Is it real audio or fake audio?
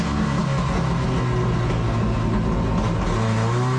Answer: real